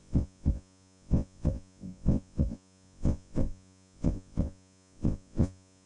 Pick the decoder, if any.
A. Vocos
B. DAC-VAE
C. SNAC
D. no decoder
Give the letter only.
A